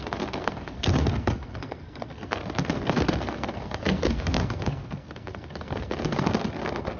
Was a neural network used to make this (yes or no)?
yes